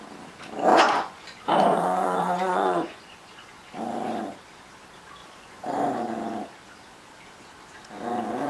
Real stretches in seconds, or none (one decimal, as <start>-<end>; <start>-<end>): 0.0-0.7; 3.8-5.2; 5.9-8.5